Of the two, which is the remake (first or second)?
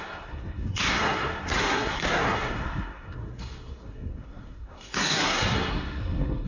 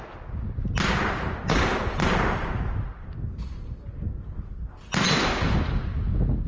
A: first